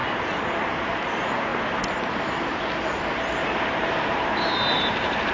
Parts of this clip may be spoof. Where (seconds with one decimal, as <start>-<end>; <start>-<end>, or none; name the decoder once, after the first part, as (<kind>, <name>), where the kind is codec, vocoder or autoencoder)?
0.0-0.7 (vocoder, BigVGAN v2); 3.4-5.3